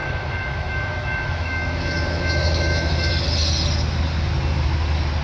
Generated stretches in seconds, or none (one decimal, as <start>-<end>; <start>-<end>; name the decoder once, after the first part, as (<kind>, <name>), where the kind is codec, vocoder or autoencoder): 0.0-3.1 (autoencoder, DAC-VAE)